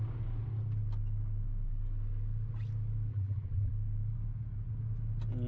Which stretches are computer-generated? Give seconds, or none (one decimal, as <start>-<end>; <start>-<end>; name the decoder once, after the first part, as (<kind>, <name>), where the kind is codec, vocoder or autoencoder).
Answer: 3.1-3.7 (vocoder, BigVGAN v2)

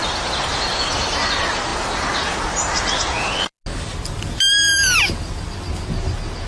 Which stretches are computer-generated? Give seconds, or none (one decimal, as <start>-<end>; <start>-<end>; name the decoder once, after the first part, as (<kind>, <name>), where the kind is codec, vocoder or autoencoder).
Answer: none

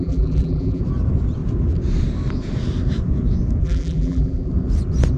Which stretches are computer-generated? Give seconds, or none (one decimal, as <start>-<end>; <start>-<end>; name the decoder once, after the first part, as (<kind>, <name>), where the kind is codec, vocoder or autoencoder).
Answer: 0.0-0.8 (vocoder, BigVGAN v2); 3.6-4.5